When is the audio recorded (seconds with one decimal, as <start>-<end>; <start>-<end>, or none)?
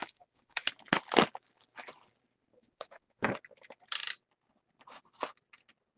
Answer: 0.7-2.5; 3.3-6.0